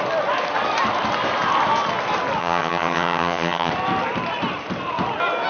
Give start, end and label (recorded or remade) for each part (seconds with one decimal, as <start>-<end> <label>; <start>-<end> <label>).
0.0-2.4 recorded; 2.4-3.7 remade; 3.7-5.5 recorded